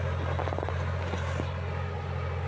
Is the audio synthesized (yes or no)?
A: no